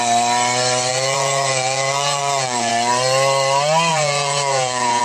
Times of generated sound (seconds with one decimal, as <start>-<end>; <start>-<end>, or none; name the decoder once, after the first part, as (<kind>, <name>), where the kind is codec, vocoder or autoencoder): 0.9-2.7 (vocoder, Vocos); 3.9-5.0